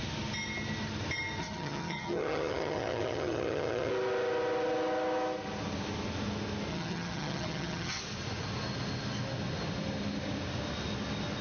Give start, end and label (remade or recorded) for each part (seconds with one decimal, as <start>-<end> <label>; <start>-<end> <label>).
0.0-1.4 recorded; 1.4-3.9 remade; 3.9-6.7 recorded; 6.7-8.0 remade; 8.0-11.4 recorded